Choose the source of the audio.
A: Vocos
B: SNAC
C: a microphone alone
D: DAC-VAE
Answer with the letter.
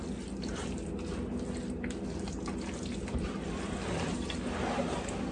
C